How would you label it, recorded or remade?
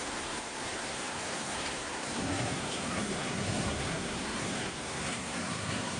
remade